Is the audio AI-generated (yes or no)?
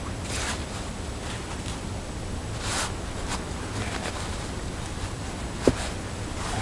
no